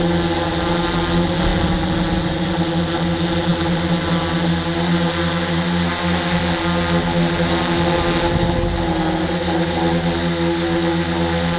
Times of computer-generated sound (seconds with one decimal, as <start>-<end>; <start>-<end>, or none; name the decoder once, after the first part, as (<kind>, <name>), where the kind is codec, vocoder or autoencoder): none